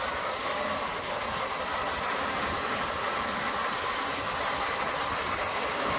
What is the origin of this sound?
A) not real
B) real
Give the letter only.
B